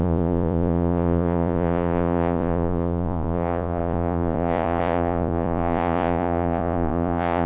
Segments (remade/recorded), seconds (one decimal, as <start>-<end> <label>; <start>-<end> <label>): 0.0-7.5 remade